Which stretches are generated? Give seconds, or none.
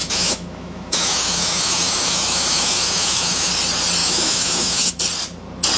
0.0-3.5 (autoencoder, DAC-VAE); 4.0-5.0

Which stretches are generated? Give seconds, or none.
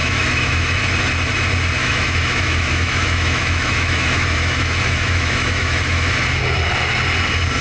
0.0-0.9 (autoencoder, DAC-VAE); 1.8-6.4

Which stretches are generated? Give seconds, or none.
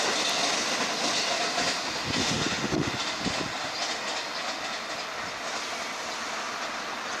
2.2-3.0 (autoencoder, DAC-VAE)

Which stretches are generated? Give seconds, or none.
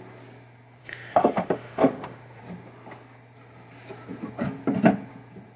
0.8-2.4 (autoencoder, DAC-VAE)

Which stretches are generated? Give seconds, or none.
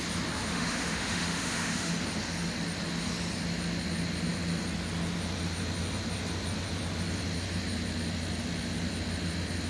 0.5-1.9 (autoencoder, DAC-VAE)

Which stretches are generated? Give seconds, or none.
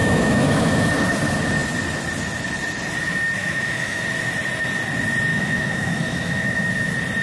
0.0-0.9 (autoencoder, DAC-VAE); 3.4-4.0; 5.3-6.7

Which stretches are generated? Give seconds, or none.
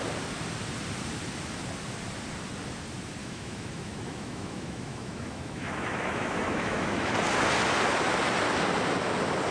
3.2-7.1 (autoencoder, DAC-VAE)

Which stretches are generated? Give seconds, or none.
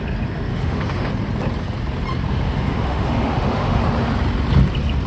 0.5-1.1 (autoencoder, DAC-VAE); 2.3-3.8